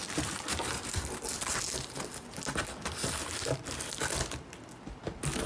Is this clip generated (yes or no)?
no